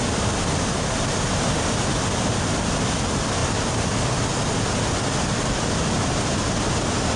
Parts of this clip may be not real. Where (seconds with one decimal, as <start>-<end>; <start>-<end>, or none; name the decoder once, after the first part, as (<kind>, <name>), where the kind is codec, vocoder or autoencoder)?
none